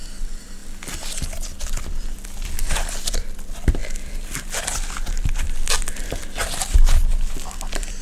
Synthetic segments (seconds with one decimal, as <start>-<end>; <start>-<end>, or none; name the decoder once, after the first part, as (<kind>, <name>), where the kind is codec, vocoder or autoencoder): none